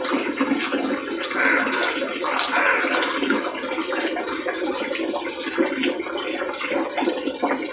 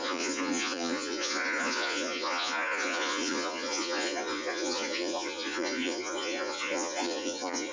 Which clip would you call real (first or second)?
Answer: first